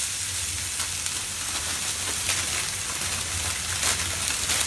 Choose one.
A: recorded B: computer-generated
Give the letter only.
A